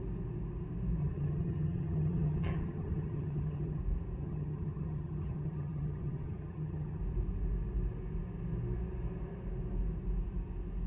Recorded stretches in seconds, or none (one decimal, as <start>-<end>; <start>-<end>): 0.0-1.0; 3.8-4.2; 7.0-10.9